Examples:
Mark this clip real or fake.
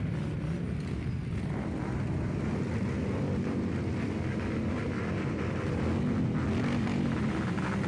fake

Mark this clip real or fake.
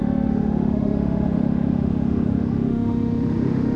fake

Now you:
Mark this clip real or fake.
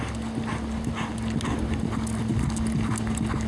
real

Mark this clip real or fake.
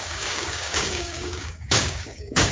fake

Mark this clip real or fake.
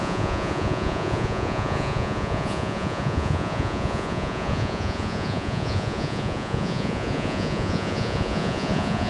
fake